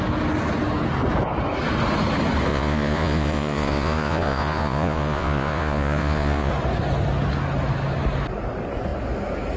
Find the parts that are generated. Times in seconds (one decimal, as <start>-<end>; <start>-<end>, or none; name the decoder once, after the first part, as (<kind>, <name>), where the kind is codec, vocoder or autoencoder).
2.5-6.5 (vocoder, Vocos)